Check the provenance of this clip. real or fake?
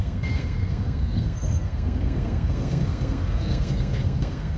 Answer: fake